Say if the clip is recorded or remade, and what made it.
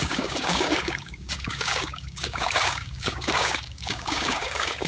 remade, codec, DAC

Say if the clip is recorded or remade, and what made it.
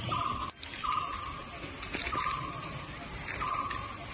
recorded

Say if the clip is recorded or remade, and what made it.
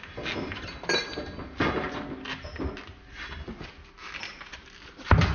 recorded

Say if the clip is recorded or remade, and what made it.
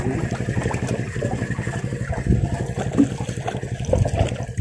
recorded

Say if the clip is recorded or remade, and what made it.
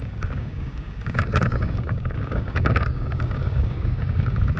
remade, codec, DAC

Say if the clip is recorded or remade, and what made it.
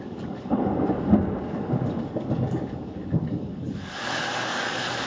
remade, codec, DAC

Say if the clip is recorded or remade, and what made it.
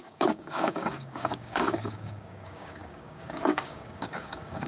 remade, codec, DAC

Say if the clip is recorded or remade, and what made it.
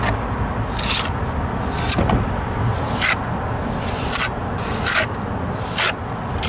recorded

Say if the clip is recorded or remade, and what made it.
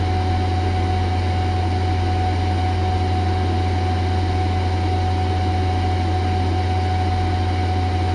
recorded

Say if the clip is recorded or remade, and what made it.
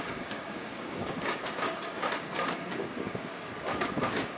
remade, codec, DAC